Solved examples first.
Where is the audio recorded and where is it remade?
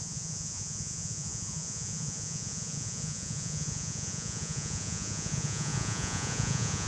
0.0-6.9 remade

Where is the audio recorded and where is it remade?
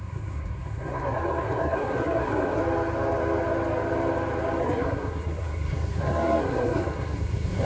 0.0-2.6 remade; 2.6-4.6 recorded; 4.6-7.7 remade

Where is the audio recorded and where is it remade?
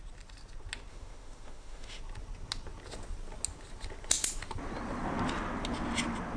0.0-0.9 recorded; 0.9-2.0 remade; 2.0-6.4 recorded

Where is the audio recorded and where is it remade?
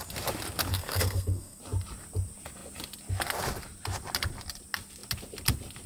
0.0-0.7 recorded; 0.7-1.6 remade; 1.6-5.9 recorded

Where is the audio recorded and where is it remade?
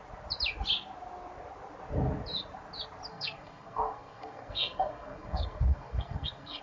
0.0-3.1 recorded; 3.1-6.6 remade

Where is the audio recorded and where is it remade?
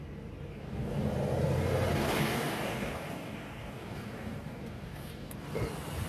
0.0-0.5 recorded; 0.5-1.1 remade; 1.1-1.9 recorded; 1.9-5.3 remade; 5.3-6.1 recorded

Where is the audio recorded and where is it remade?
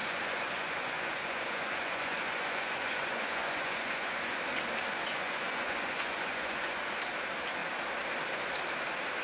0.0-4.4 remade; 4.4-5.1 recorded; 5.1-6.8 remade; 6.8-9.2 recorded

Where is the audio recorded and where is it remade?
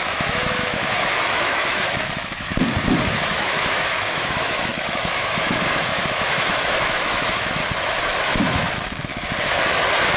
0.0-2.5 remade; 2.5-3.1 recorded; 3.1-7.6 remade; 7.6-8.2 recorded; 8.2-9.1 remade; 9.1-10.2 recorded